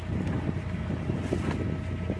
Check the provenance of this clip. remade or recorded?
recorded